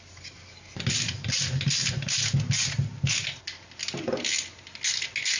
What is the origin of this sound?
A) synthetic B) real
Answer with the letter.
B